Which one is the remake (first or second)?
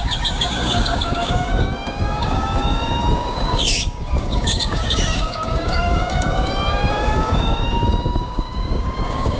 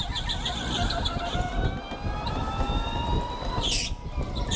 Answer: first